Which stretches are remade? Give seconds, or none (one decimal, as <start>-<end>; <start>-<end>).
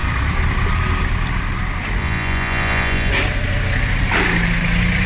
2.0-3.1